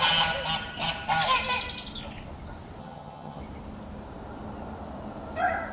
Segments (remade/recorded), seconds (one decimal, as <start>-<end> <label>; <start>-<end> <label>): 0.0-2.8 recorded; 2.8-3.4 remade; 3.4-5.7 recorded